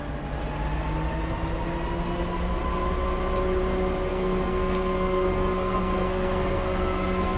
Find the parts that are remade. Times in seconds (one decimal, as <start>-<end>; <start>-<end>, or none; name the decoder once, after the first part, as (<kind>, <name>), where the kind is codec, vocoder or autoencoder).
4.1-7.4 (codec, SNAC)